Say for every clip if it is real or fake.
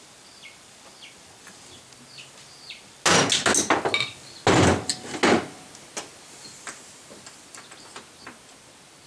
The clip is real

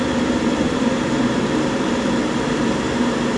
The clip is fake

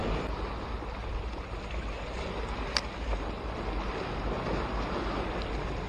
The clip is real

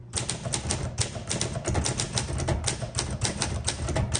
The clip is real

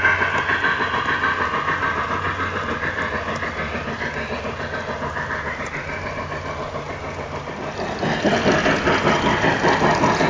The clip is real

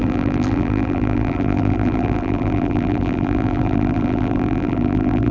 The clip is fake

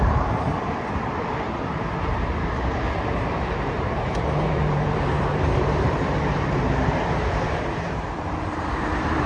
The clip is fake